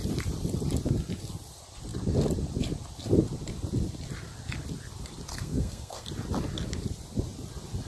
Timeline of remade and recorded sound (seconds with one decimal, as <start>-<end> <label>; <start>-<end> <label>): 0.0-5.3 recorded; 5.3-6.1 remade; 6.1-7.9 recorded